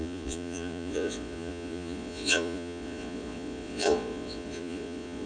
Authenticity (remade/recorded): remade